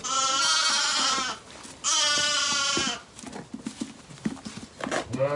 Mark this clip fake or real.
real